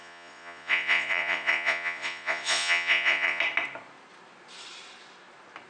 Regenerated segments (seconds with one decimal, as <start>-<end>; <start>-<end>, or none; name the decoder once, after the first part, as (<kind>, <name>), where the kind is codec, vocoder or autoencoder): 0.0-3.4 (vocoder, Vocos)

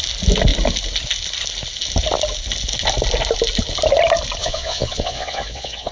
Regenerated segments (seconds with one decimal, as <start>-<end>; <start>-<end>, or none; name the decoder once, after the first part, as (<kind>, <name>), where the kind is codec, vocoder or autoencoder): 4.4-5.9 (vocoder, Vocos)

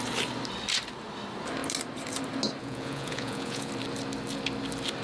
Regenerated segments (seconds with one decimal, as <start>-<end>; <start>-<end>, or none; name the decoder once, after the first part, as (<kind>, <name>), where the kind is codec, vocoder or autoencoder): 2.6-3.7 (vocoder, Vocos)

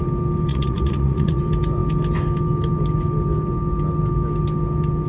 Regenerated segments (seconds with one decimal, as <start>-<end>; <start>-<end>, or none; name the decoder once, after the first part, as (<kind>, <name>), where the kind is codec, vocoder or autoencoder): 0.5-1.4 (vocoder, Vocos)

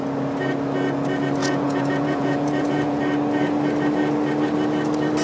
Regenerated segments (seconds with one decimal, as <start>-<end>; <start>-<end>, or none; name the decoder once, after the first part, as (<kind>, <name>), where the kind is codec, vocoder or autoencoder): 1.4-3.0 (vocoder, Vocos)

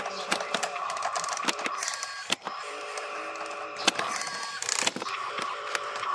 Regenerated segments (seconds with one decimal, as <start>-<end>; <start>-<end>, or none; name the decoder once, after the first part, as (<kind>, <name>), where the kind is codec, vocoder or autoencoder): none

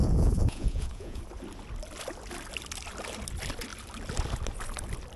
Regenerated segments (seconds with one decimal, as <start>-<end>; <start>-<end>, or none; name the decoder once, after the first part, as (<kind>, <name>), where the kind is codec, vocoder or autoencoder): 0.0-1.2 (vocoder, Vocos)